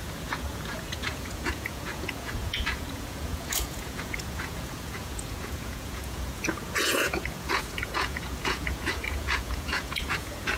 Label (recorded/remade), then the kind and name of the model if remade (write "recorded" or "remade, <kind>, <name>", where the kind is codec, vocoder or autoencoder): remade, vocoder, Vocos